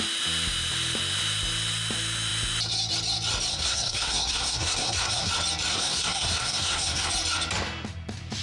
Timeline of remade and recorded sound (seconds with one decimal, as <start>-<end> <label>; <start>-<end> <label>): 0.0-3.5 recorded; 3.5-5.3 remade; 5.3-5.7 recorded; 5.7-7.1 remade; 7.1-8.4 recorded